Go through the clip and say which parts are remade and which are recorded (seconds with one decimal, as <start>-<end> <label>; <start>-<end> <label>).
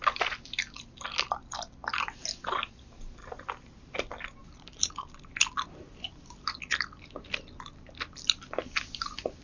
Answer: 0.0-3.2 recorded; 3.2-3.7 remade; 3.7-4.4 recorded; 4.4-5.3 remade; 5.3-9.4 recorded